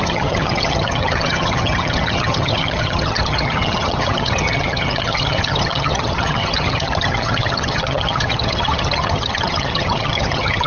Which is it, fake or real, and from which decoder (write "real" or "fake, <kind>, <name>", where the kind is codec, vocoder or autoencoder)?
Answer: fake, vocoder, HiFi-GAN